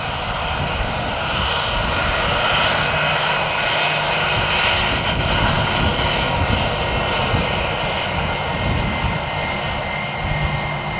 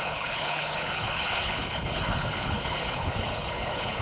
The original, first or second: first